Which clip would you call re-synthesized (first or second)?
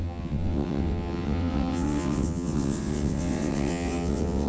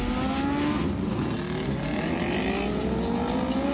first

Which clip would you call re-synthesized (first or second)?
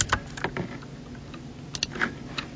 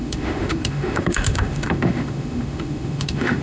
second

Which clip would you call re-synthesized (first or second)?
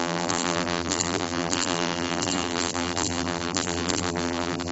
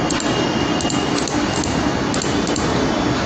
first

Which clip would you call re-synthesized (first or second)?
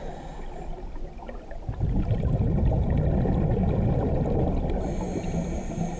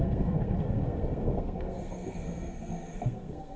second